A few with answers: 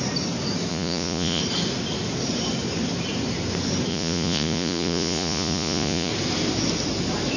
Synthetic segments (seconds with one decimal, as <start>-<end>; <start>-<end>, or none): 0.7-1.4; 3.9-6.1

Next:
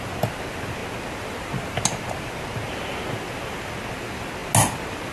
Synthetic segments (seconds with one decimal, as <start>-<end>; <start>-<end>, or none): none

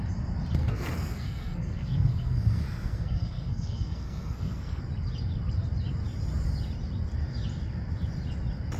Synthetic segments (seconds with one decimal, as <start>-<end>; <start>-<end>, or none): 0.6-4.8